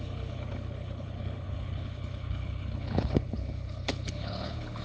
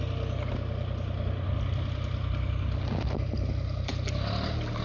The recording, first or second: second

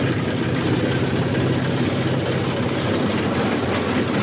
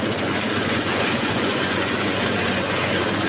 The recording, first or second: first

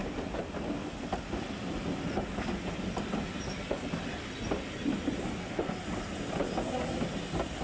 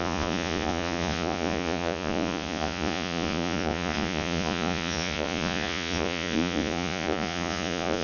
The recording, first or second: first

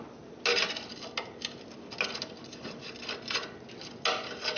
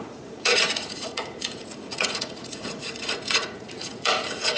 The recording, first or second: first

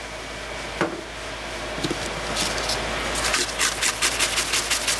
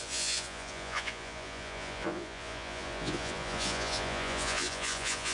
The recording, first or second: first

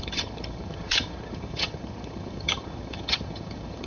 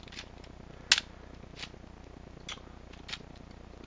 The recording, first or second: second